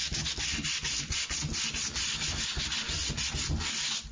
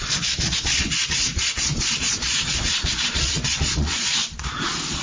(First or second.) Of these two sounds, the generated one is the second